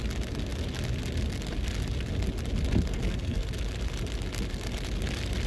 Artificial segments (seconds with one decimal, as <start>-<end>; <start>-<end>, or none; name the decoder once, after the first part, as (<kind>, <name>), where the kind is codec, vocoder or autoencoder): 2.9-3.5 (codec, SNAC)